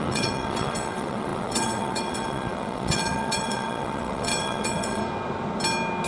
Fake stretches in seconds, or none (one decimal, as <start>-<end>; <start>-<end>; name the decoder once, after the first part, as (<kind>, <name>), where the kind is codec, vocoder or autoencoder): 0.0-5.0 (vocoder, WaveNeXt)